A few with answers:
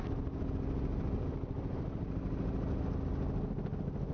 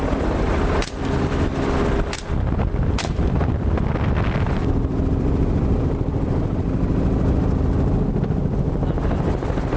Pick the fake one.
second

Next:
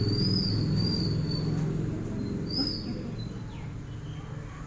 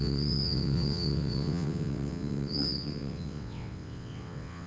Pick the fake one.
second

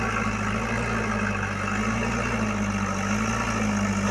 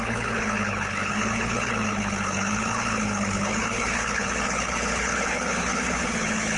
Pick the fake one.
second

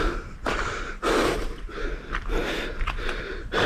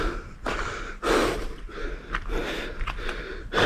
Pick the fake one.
first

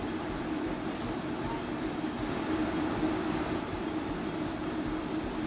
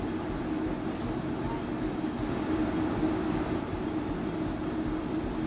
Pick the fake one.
first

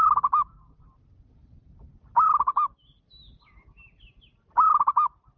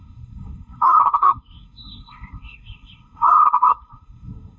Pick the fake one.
second